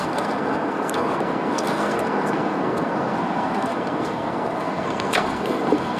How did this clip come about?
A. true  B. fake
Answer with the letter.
B